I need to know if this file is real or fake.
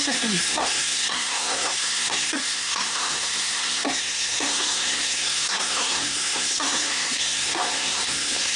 fake